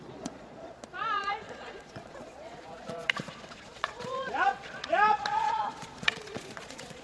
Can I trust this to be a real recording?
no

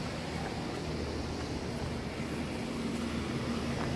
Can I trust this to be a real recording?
yes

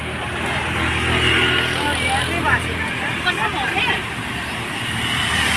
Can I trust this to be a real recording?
yes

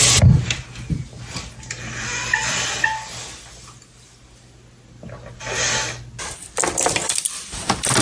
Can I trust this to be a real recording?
yes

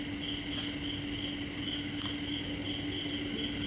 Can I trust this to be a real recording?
yes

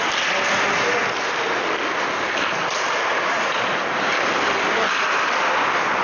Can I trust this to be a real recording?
yes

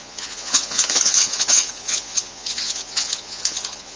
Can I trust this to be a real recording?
no